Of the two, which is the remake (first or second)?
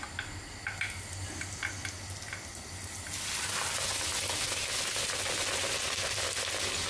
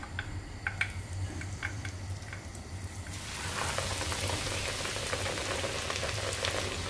second